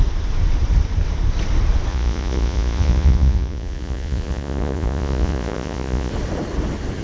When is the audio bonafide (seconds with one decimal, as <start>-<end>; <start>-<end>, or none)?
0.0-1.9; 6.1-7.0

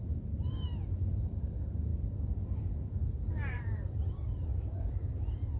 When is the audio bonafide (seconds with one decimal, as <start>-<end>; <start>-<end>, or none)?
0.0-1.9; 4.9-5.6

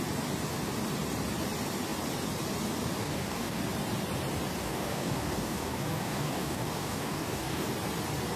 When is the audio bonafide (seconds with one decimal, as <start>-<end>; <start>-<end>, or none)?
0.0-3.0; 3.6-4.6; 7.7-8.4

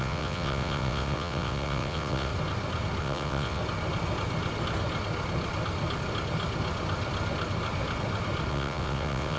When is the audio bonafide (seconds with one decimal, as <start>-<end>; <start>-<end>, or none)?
2.3-3.0; 3.6-8.5